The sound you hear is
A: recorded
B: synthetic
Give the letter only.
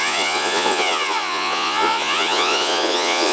B